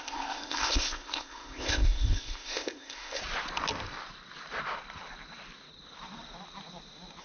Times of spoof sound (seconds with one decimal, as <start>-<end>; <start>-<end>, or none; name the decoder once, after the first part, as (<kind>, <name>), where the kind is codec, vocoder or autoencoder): 0.0-3.2 (codec, ZipCodec)